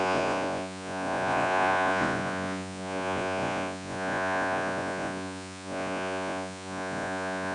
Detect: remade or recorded remade